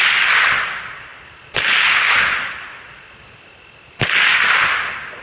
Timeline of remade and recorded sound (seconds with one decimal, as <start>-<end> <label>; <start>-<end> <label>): 0.0-5.2 recorded